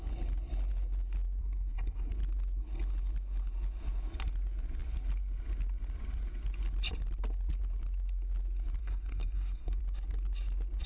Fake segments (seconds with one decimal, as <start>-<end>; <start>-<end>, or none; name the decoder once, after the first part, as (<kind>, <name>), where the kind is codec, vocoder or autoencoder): 1.4-2.1 (codec, SNAC); 8.8-9.8